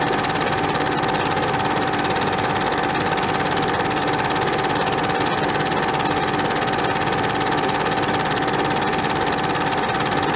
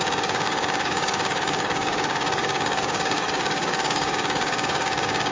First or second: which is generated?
second